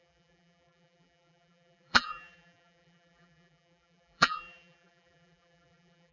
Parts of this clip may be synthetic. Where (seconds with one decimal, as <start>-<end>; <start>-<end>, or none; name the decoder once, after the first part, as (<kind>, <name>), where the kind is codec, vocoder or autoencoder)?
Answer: 0.0-6.1 (vocoder, BigVGAN v2)